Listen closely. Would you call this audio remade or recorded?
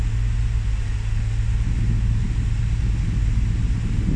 recorded